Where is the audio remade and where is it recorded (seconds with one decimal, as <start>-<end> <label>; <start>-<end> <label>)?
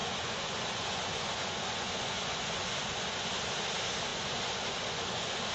0.0-3.3 remade; 3.3-4.1 recorded; 4.1-5.5 remade